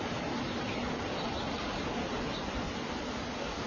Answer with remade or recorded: recorded